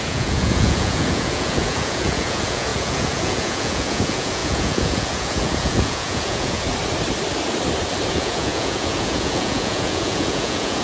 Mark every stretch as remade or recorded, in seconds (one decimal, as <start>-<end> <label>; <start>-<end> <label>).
0.0-6.7 remade; 6.7-8.1 recorded; 8.1-10.8 remade

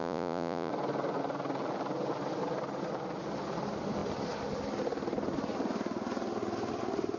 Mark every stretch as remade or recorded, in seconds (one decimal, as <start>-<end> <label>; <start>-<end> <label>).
0.0-0.7 remade; 0.7-7.2 recorded

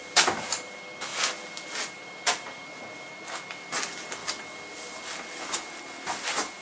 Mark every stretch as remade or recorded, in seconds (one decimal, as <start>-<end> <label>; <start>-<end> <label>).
0.0-6.6 recorded

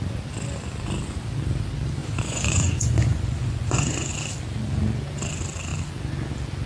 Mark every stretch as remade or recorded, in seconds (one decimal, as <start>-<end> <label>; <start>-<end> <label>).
0.0-2.0 recorded; 2.0-4.1 remade; 4.1-6.7 recorded

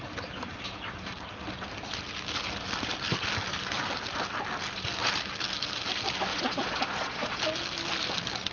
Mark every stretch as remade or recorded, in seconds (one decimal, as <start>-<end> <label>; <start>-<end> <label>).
0.0-6.3 recorded; 6.3-7.4 remade; 7.4-8.5 recorded

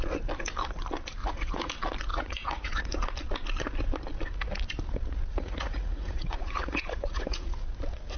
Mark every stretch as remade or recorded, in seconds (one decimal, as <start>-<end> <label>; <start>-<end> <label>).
0.0-1.2 recorded; 1.2-1.7 remade; 1.7-2.1 recorded; 2.1-2.8 remade; 2.8-5.3 recorded; 5.3-7.7 remade; 7.7-8.2 recorded

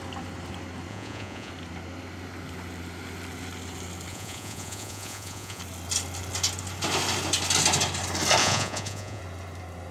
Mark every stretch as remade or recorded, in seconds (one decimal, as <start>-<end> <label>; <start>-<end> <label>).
0.0-0.9 recorded; 0.9-1.5 remade; 1.5-4.1 recorded; 4.1-5.6 remade; 5.6-8.4 recorded; 8.4-9.2 remade; 9.2-9.9 recorded

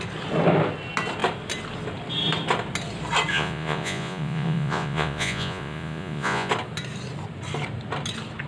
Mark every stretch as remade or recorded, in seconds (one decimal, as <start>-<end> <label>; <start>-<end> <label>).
0.0-3.3 recorded; 3.3-6.5 remade; 6.5-8.5 recorded